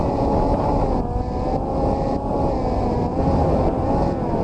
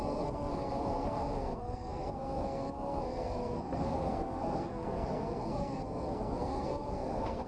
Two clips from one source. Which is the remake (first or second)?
second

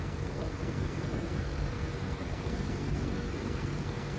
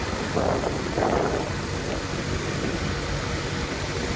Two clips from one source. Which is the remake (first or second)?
first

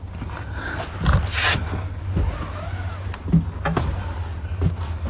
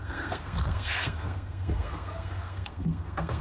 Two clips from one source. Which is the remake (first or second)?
second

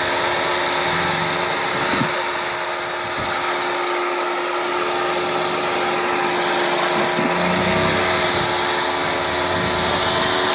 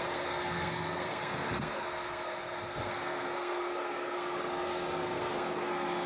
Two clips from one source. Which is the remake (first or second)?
second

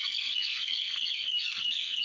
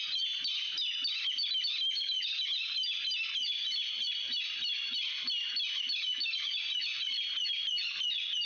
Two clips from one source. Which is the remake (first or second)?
first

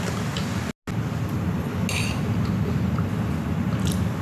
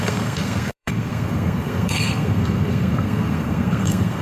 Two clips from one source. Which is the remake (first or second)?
second